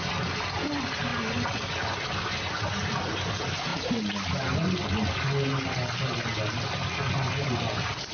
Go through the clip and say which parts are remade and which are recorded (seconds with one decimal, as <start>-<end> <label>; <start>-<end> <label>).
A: 0.0-1.1 recorded; 1.1-2.3 remade; 2.3-8.1 recorded